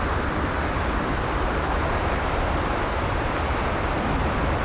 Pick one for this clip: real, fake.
real